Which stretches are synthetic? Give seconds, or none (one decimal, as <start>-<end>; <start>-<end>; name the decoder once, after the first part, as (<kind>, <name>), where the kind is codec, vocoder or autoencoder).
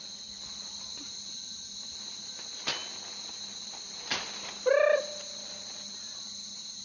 none